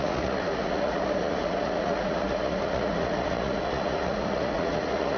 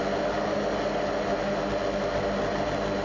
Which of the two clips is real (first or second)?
second